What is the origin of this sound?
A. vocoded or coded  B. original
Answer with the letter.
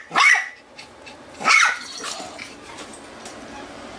A